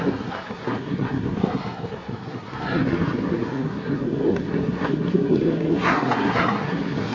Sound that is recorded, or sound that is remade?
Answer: remade